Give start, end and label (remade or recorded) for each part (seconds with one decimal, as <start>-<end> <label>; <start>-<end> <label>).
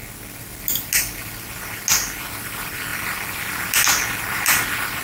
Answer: 0.0-5.0 recorded